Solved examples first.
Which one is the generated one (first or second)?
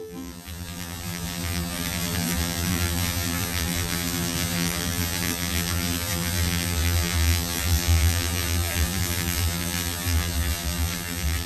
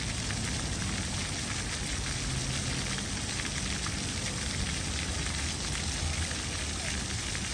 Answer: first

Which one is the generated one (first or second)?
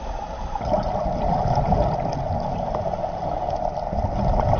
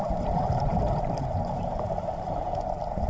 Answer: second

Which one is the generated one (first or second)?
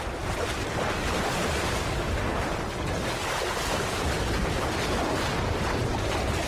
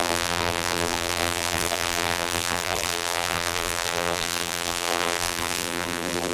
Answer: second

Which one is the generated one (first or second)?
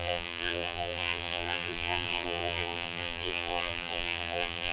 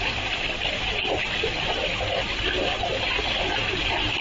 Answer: first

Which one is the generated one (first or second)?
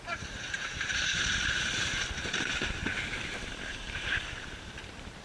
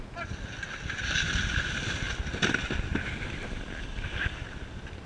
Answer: first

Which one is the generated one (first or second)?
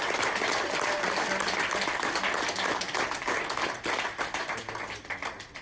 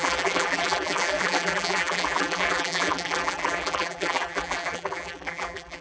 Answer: second